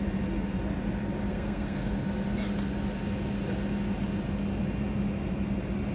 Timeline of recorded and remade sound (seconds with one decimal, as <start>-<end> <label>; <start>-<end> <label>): 0.0-1.3 recorded; 1.3-1.9 remade; 1.9-5.9 recorded